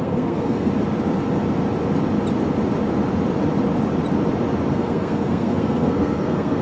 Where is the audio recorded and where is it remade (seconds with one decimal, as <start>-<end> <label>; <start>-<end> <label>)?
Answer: 0.0-0.7 remade; 0.7-4.7 recorded; 4.7-6.6 remade